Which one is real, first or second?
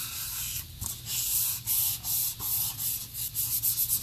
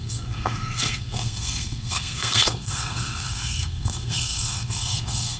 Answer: first